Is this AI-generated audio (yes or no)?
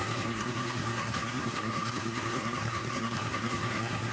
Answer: yes